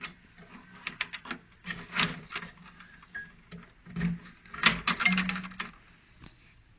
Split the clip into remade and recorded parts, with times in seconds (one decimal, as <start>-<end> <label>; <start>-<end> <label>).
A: 0.0-6.8 recorded